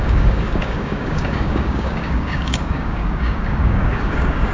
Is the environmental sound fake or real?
fake